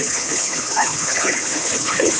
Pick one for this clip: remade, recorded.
remade